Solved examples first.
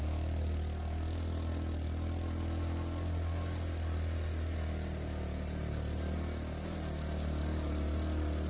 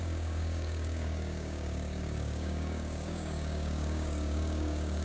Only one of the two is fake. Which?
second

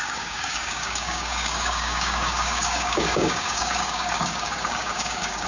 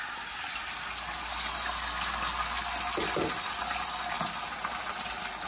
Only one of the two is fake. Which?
first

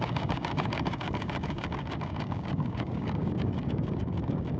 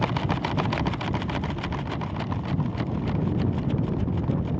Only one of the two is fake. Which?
first